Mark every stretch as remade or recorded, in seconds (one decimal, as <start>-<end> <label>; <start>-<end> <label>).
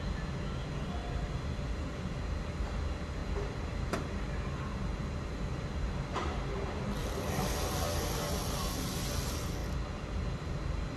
0.0-11.0 recorded